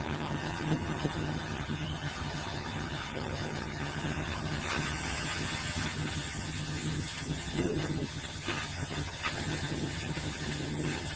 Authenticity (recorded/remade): remade